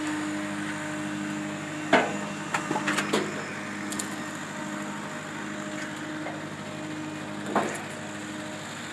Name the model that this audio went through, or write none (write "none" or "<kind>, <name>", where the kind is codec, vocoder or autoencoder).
none